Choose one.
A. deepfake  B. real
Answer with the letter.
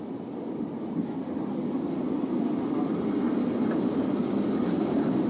B